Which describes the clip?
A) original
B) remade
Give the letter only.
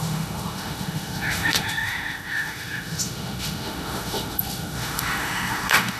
B